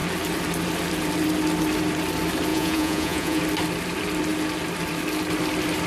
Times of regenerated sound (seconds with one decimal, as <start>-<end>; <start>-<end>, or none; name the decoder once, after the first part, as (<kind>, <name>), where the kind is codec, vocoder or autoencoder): 2.5-3.4 (vocoder, Vocos)